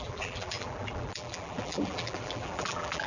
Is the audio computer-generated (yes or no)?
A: yes